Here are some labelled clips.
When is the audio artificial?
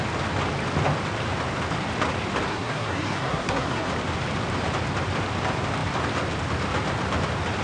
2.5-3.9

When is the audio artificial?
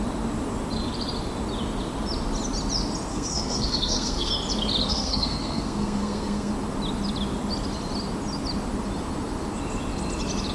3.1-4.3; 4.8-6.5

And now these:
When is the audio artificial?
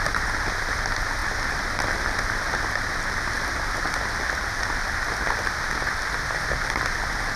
none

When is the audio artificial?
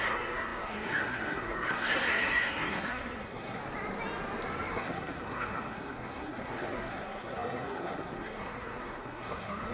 0.0-3.6; 4.7-9.7